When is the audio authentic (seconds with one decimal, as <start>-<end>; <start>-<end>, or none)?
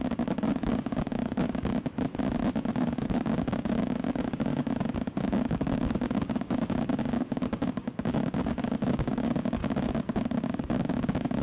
1.7-2.7